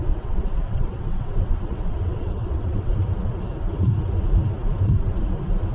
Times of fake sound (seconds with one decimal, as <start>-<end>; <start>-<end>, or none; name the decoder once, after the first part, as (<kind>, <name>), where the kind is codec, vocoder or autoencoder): 0.0-2.9 (vocoder, WaveNeXt)